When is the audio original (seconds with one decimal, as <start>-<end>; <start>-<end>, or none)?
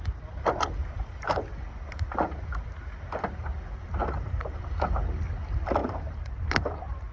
0.0-0.8; 1.3-4.0; 4.6-5.8; 6.4-7.1